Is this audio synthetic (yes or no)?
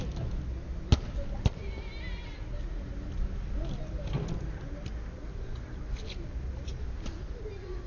no